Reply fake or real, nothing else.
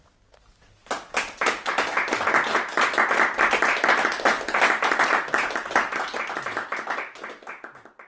real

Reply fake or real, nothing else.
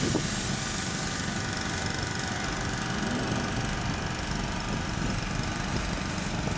real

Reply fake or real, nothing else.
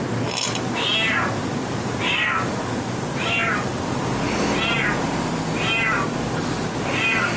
real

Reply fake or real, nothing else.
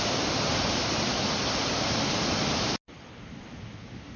real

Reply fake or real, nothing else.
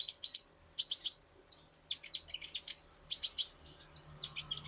real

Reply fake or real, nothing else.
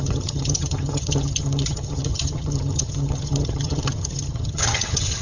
fake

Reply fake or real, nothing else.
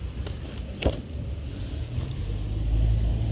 real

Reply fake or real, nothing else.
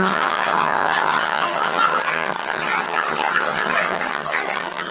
fake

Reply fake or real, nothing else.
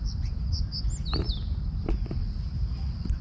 real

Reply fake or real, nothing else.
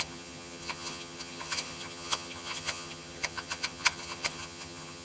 fake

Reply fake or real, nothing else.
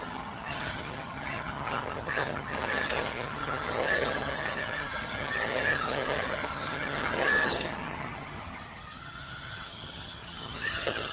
fake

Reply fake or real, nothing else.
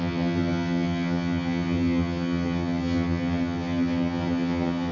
fake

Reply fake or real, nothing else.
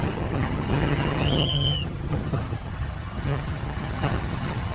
fake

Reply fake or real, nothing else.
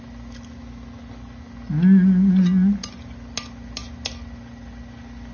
real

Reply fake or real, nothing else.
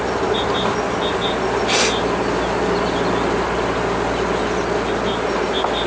real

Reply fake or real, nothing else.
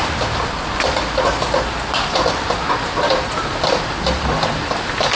real